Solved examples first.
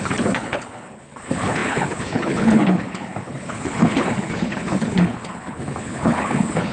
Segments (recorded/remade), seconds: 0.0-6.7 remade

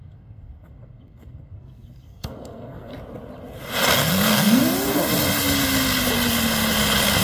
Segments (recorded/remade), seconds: 0.0-2.9 remade; 2.9-4.1 recorded; 4.1-4.6 remade; 4.6-7.2 recorded

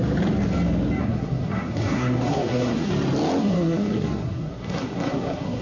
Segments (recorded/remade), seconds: 0.0-1.0 recorded; 1.0-2.9 remade; 2.9-3.4 recorded; 3.4-5.6 remade